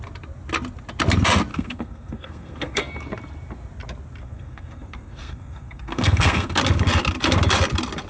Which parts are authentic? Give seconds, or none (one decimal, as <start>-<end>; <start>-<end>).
0.0-1.5; 2.8-4.2; 6.6-8.1